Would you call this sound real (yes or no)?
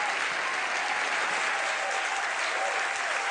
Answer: yes